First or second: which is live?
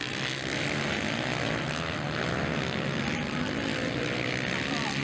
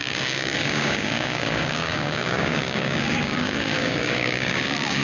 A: first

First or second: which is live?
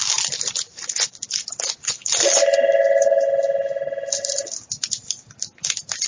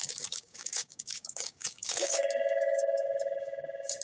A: first